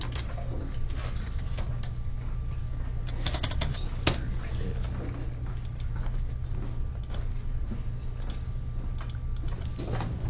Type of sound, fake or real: real